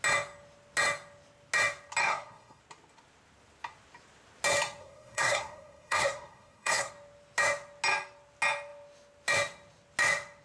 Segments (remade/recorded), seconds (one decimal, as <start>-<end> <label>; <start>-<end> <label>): 0.0-2.0 recorded; 2.0-2.6 remade; 2.6-4.8 recorded; 4.8-6.9 remade; 6.9-10.4 recorded